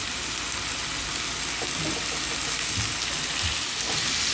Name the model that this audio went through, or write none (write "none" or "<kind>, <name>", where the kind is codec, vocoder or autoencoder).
none